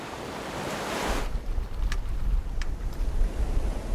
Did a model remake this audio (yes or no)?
yes